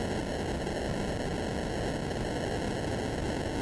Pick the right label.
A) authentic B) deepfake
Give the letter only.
A